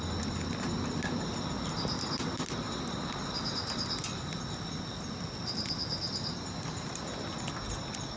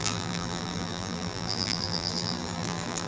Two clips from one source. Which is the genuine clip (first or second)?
first